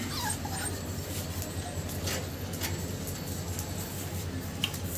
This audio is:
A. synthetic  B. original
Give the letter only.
B